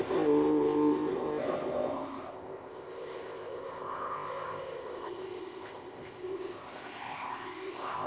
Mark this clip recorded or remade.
remade